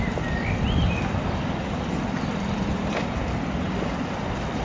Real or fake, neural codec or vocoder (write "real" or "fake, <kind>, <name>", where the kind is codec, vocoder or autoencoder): real